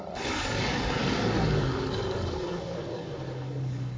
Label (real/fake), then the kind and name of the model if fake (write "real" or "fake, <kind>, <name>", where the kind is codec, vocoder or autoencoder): fake, codec, DAC